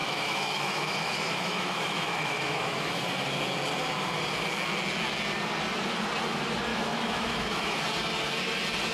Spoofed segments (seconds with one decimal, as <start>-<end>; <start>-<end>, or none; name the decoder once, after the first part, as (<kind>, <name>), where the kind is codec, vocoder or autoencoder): 0.0-3.0 (autoencoder, DAC-VAE); 6.7-7.8